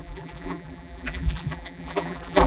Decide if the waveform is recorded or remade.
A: remade